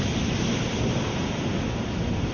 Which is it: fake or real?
real